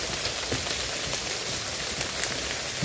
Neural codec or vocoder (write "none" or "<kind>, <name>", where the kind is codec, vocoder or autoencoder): none